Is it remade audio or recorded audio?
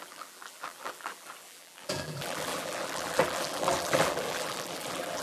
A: remade